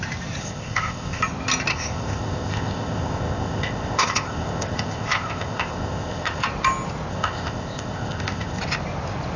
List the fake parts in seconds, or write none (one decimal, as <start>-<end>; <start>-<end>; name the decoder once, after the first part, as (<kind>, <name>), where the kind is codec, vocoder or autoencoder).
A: 0.4-1.2 (codec, ZipCodec); 1.7-6.4; 7.1-8.6